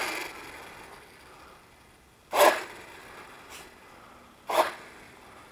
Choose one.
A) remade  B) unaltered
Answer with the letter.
B